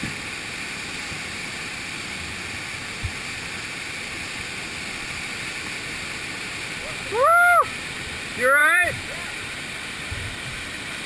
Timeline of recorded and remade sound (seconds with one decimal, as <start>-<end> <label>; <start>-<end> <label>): 0.0-8.6 recorded; 8.6-11.1 remade